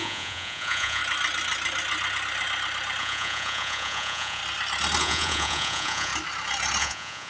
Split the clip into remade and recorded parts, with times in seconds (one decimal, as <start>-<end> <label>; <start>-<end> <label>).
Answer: 0.0-1.0 remade; 1.0-3.0 recorded; 3.0-4.4 remade; 4.4-5.0 recorded; 5.0-6.1 remade; 6.1-6.8 recorded; 6.8-7.3 remade